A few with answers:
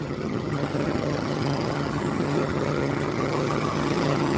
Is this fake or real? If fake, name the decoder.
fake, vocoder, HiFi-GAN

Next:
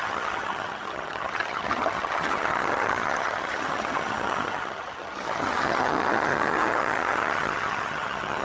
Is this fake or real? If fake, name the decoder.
fake, vocoder, HiFi-GAN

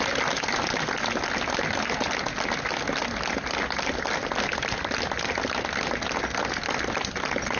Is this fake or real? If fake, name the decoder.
real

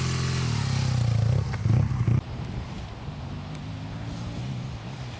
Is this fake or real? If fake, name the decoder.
real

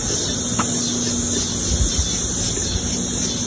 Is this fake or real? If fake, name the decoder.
real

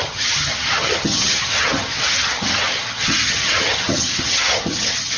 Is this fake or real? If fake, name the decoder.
fake, vocoder, HiFi-GAN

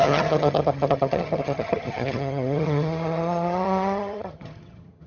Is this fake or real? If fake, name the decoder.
fake, vocoder, HiFi-GAN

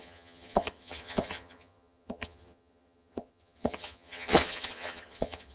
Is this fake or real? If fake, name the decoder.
fake, vocoder, HiFi-GAN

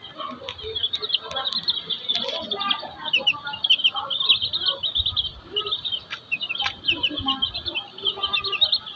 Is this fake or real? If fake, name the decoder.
real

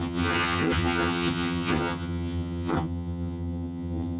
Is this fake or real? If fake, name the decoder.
fake, vocoder, HiFi-GAN